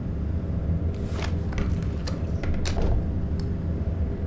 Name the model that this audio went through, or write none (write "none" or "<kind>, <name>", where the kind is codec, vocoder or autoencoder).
none